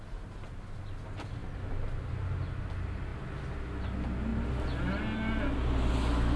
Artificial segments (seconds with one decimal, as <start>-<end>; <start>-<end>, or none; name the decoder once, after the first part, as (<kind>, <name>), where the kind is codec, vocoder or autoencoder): none